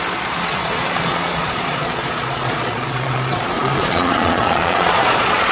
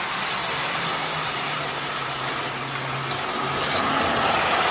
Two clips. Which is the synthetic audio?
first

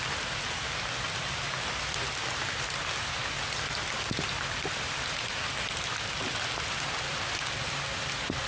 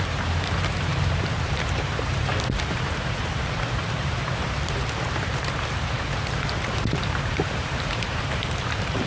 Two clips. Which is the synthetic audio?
second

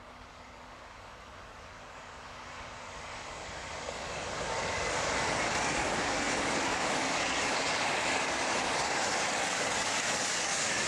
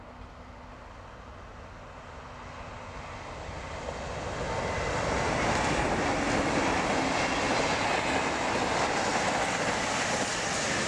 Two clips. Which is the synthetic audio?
first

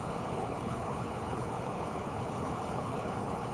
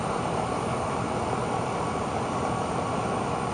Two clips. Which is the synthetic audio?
first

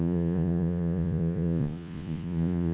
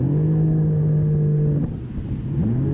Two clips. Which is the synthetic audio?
first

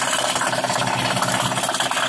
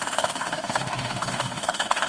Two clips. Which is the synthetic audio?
second